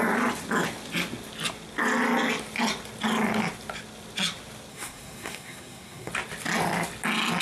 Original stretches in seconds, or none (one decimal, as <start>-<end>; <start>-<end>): 0.0-4.7; 6.1-7.4